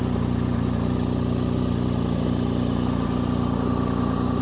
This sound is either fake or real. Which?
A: real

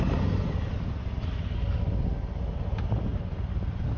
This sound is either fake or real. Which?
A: real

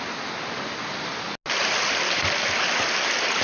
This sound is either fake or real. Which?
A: real